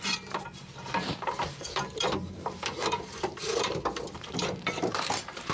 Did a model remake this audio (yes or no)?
yes